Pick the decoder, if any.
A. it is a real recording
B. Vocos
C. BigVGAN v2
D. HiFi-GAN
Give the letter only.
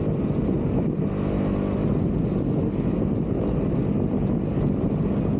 A